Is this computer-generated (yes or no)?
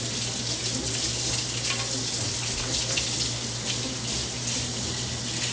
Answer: no